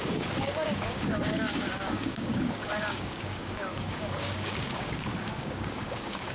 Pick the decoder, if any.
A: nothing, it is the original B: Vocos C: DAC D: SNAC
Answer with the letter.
C